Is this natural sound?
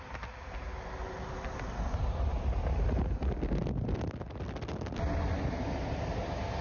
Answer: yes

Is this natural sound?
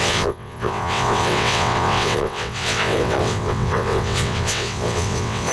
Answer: no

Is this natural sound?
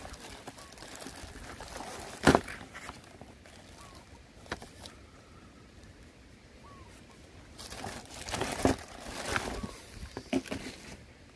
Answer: yes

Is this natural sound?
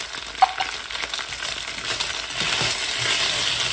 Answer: yes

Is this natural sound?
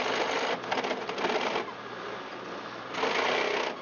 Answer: yes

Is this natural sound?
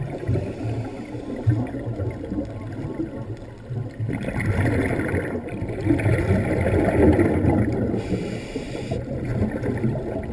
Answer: yes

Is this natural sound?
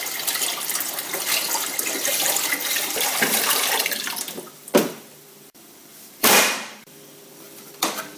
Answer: no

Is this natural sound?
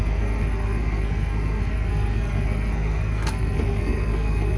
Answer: no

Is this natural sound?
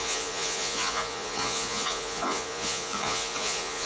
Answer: no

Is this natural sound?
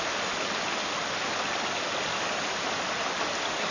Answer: yes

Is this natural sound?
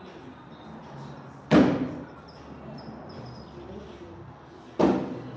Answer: yes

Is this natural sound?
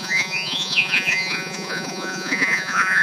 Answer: no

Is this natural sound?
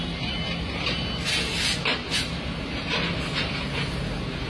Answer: yes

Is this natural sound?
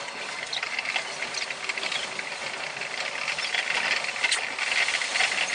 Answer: yes